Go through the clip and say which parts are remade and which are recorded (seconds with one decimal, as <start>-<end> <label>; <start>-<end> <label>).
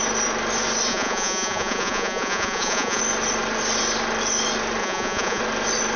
0.0-0.9 recorded; 0.9-3.0 remade; 3.0-4.8 recorded; 4.8-5.4 remade; 5.4-6.0 recorded